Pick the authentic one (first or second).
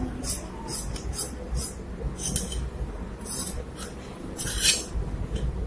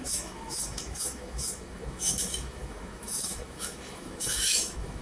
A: first